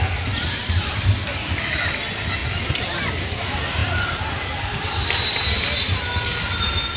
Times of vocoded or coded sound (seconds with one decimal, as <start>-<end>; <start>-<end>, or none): none